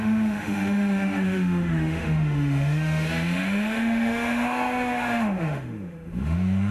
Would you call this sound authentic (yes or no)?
no